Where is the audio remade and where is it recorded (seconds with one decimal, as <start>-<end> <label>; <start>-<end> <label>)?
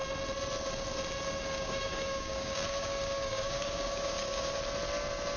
0.0-1.4 recorded; 1.4-4.6 remade; 4.6-5.4 recorded